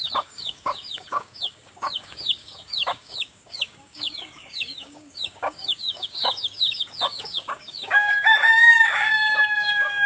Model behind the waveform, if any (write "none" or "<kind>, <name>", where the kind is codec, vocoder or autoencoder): codec, DAC